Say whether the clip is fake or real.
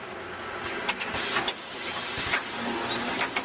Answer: real